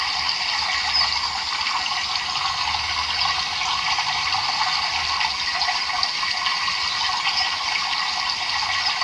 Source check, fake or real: real